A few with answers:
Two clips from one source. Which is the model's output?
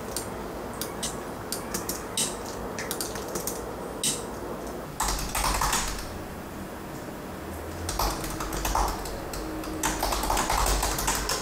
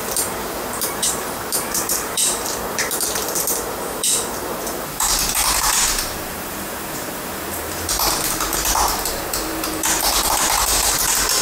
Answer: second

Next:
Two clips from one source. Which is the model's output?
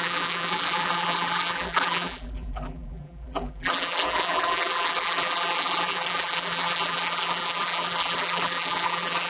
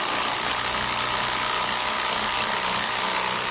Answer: first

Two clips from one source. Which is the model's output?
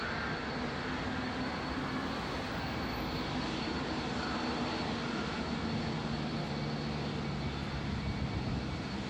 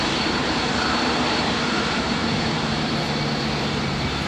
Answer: second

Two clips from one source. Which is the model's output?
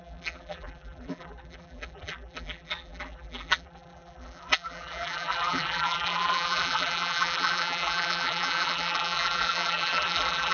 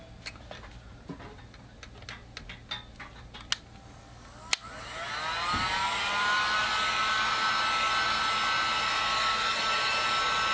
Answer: first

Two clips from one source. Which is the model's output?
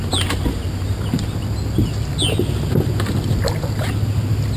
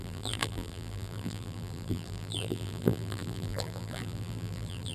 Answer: second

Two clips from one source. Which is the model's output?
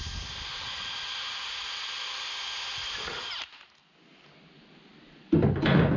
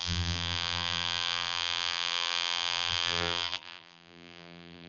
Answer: second